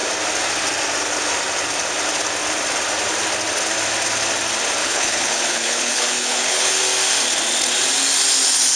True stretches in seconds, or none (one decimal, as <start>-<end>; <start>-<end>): 0.0-4.8; 6.8-8.8